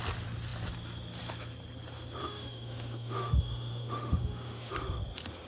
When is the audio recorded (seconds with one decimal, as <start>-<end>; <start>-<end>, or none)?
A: 0.0-2.2; 4.7-5.5